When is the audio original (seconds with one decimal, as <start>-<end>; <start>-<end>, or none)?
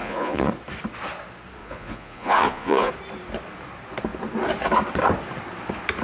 0.5-1.6; 2.9-6.0